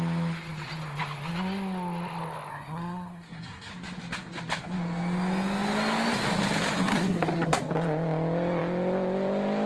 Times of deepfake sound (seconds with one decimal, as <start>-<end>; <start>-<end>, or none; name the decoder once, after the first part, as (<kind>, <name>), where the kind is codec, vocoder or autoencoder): 2.5-3.7 (codec, SNAC); 6.9-7.6